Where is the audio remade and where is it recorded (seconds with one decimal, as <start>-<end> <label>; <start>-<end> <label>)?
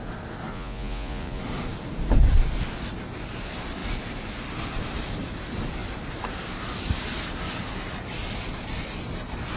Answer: 0.0-0.5 recorded; 0.5-1.4 remade; 1.4-9.6 recorded